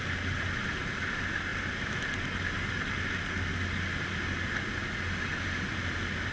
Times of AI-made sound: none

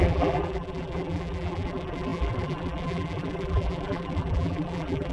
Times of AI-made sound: 0.0-5.1 (vocoder, BigVGAN v2)

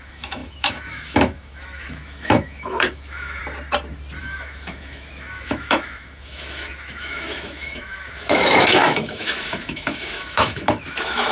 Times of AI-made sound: 0.0-3.4 (autoencoder, DAC-VAE); 4.2-11.3

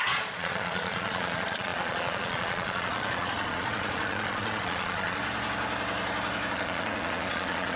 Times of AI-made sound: 0.0-5.2 (vocoder, Vocos); 6.5-7.8

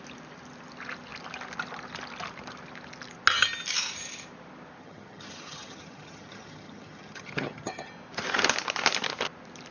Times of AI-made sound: 4.8-7.9 (vocoder, HiFi-GAN)

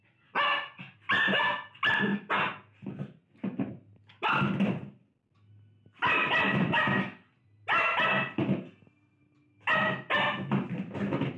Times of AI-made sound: none

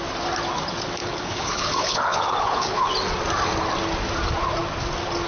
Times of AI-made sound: 1.0-2.9 (codec, HILCodec)

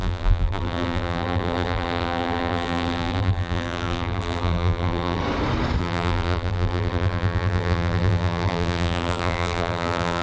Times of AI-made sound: 0.0-5.2 (vocoder, BigVGAN v2); 5.8-10.2